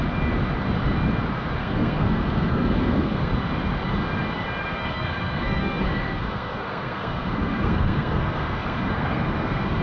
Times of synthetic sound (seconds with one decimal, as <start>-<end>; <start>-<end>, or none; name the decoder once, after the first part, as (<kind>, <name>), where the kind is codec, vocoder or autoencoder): 1.6-3.3 (codec, SNAC); 4.7-9.8